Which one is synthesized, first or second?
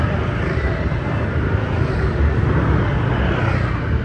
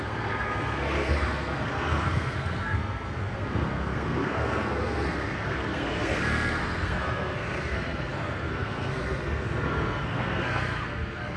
second